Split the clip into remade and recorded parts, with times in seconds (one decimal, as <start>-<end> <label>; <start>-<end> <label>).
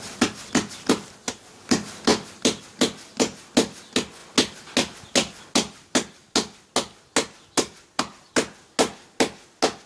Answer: 0.0-9.9 recorded